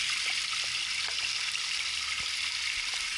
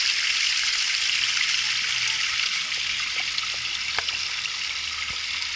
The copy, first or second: first